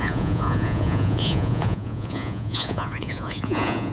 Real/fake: fake